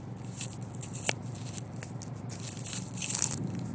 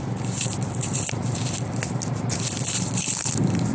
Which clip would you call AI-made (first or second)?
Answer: second